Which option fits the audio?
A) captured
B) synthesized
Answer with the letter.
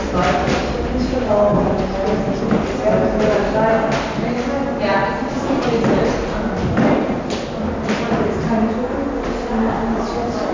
A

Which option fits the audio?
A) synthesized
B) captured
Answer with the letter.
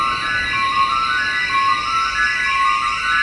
B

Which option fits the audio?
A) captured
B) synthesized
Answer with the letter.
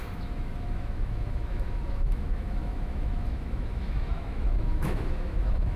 B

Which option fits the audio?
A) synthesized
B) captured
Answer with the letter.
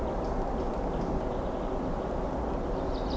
B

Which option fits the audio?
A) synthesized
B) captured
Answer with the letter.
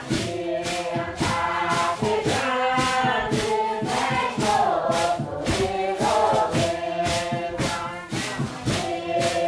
B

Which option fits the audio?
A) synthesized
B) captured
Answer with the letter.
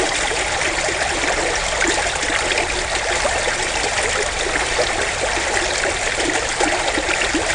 B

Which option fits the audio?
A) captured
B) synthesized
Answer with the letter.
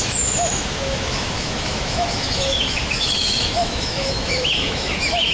B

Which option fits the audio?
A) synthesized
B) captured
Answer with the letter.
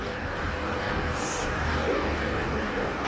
A